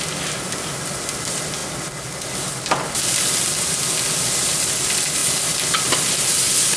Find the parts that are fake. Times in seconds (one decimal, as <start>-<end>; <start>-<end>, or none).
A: none